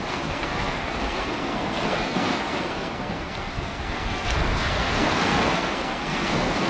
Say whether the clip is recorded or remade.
remade